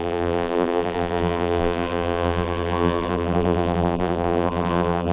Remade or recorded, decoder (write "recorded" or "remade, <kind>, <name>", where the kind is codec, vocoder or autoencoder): remade, vocoder, BigVGAN v2